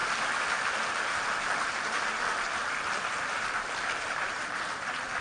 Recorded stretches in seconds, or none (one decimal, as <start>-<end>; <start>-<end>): 0.0-0.9; 2.6-3.2